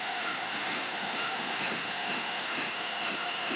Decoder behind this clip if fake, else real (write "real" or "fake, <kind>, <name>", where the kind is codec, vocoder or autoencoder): fake, autoencoder, DAC-VAE